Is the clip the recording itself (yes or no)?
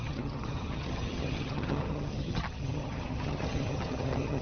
no